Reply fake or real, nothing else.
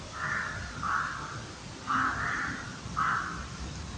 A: real